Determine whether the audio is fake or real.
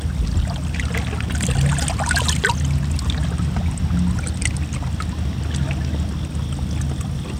real